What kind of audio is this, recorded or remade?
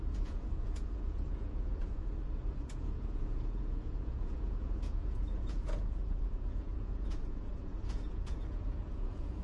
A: remade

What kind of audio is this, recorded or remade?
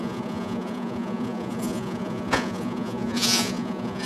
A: remade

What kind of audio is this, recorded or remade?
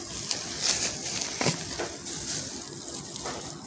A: recorded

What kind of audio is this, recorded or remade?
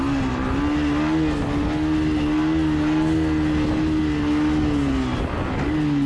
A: recorded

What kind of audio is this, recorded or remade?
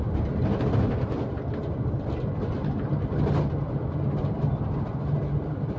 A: recorded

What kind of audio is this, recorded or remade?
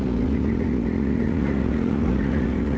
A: remade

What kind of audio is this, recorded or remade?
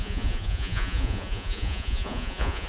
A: remade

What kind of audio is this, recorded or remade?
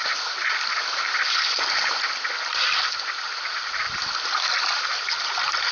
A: recorded